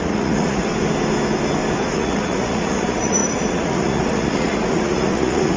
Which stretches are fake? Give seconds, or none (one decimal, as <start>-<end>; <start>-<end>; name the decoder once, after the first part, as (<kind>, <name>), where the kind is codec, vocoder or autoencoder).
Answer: 0.0-0.7 (vocoder, Vocos); 1.9-5.6